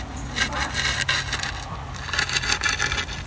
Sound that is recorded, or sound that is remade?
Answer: recorded